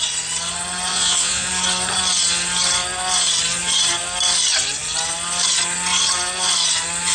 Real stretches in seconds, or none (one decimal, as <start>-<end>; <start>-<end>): 0.0-0.9; 1.5-7.1